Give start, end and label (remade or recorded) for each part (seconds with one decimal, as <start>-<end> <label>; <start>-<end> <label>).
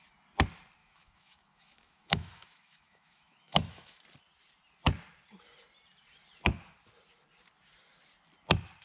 0.0-0.8 recorded; 0.8-4.0 remade; 4.0-8.8 recorded